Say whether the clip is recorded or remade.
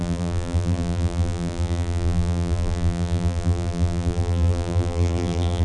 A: remade